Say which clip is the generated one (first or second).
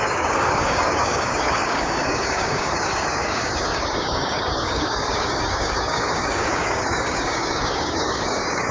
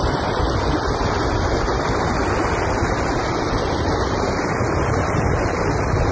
first